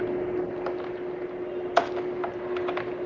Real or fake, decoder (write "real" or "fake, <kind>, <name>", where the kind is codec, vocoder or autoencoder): real